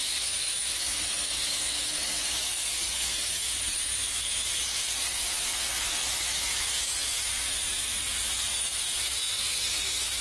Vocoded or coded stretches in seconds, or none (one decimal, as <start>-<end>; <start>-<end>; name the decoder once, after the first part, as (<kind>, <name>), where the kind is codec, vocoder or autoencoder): 0.0-10.2 (autoencoder, DAC-VAE)